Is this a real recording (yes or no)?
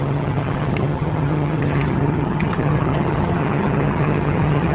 no